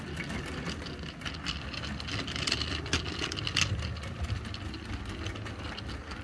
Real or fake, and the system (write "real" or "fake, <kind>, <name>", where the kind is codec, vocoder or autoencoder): real